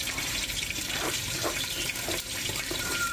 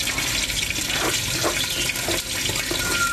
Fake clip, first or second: first